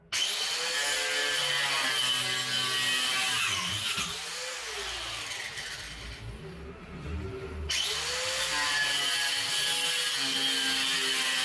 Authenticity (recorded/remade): recorded